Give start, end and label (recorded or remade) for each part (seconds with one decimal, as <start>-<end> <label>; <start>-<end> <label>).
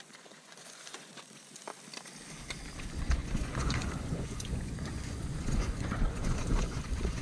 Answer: 0.0-1.7 remade; 1.7-2.8 recorded; 2.8-7.2 remade